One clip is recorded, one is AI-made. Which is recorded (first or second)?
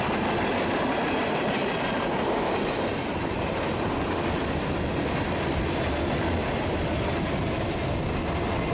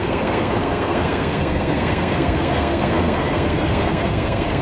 first